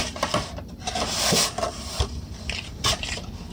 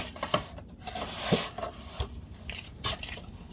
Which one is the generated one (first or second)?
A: second